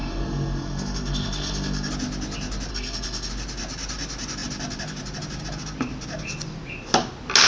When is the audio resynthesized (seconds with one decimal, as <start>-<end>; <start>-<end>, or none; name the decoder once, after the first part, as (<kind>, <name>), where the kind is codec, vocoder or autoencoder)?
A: 0.0-1.9 (codec, SNAC); 2.7-3.3